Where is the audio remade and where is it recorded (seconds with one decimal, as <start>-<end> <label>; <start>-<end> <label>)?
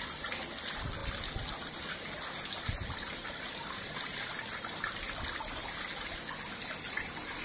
0.0-3.6 recorded; 3.6-4.2 remade; 4.2-7.4 recorded